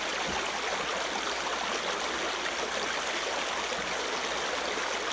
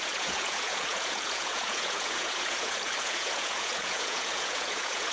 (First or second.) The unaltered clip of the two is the first